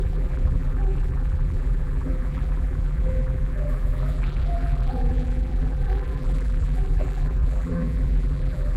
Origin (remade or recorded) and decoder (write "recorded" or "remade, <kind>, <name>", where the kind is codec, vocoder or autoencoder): remade, vocoder, BigVGAN v2